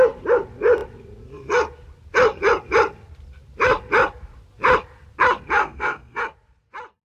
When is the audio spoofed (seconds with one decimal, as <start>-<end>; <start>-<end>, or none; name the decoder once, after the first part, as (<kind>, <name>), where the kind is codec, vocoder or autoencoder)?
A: 5.6-6.2 (codec, SNAC)